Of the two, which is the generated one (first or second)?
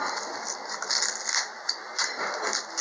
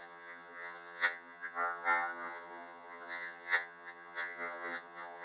second